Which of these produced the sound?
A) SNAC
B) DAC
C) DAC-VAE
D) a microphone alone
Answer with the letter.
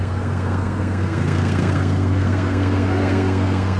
A